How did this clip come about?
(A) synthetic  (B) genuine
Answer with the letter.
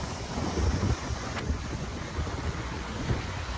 A